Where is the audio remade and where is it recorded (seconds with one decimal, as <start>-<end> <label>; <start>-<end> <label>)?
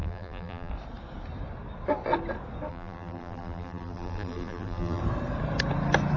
0.0-0.7 remade; 0.7-2.7 recorded; 2.7-5.0 remade; 5.0-6.2 recorded